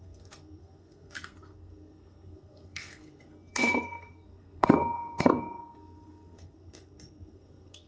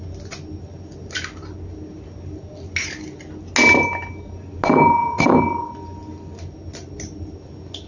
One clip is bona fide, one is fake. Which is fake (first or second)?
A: first